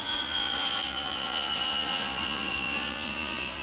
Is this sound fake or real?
fake